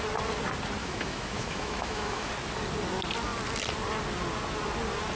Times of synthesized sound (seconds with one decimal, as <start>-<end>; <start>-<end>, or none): 0.8-2.3